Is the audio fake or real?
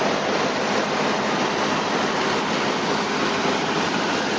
real